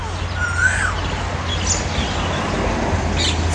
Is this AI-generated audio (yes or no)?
no